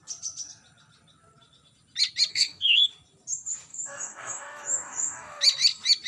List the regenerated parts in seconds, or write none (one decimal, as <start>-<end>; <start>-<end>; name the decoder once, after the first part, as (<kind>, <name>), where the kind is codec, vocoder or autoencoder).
2.3-2.9 (codec, DAC); 3.7-5.4